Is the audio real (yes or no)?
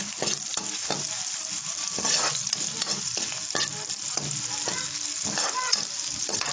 yes